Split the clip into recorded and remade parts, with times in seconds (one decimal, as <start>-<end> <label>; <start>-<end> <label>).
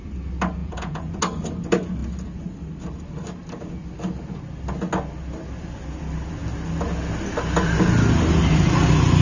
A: 0.0-0.6 recorded; 0.6-1.2 remade; 1.2-9.2 recorded